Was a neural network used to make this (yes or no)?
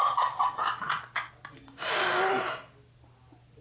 no